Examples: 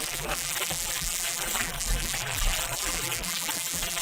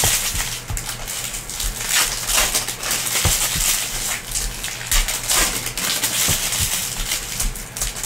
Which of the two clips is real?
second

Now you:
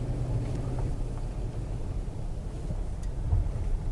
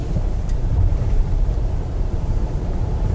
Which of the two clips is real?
first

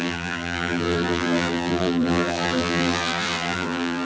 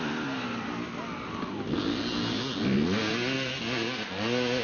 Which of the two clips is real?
second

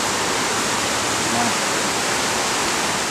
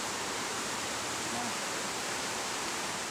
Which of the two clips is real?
first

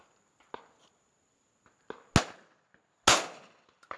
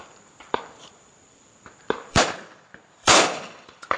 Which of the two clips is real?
first